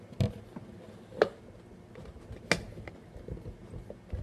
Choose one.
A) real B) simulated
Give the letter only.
A